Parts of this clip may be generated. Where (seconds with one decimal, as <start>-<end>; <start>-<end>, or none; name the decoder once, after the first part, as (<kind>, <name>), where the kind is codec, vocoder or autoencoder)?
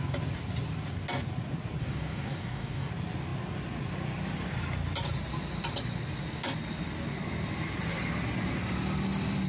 1.8-2.9 (codec, DAC)